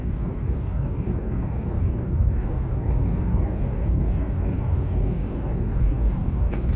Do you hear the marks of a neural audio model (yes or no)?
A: yes